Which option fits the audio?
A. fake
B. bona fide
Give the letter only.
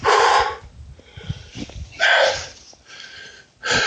B